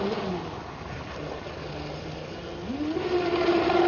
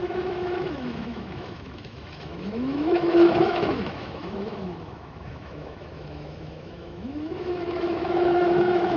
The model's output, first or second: second